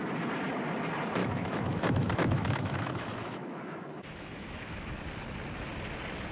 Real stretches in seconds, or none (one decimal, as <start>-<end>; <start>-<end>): 0.0-1.2; 5.0-6.3